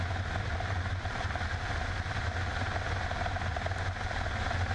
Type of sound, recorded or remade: recorded